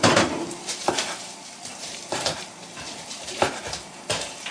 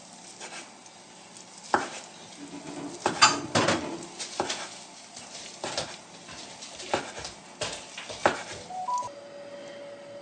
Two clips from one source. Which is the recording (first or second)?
second